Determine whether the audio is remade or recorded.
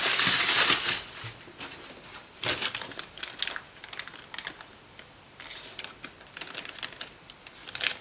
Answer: recorded